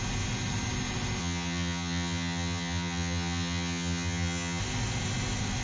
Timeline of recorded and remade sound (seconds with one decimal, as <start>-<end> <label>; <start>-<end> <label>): 0.0-1.2 recorded; 1.2-4.6 remade; 4.6-5.6 recorded